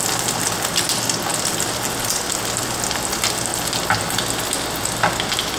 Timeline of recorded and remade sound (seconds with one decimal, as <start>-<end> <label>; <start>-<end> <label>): 0.0-5.6 recorded